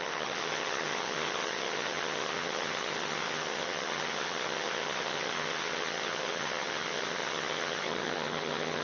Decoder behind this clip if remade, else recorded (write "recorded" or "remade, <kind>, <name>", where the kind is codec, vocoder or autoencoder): remade, vocoder, HiFi-GAN